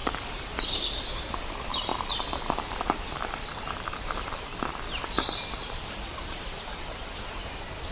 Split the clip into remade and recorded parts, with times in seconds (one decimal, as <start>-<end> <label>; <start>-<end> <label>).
0.0-1.9 remade; 1.9-2.8 recorded; 2.8-4.5 remade; 4.5-5.0 recorded; 5.0-7.9 remade